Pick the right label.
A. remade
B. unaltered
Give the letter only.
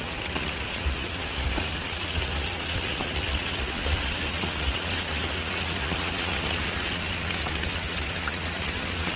A